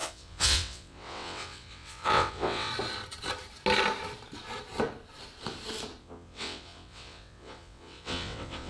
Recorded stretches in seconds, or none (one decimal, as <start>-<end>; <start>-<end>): 2.7-6.0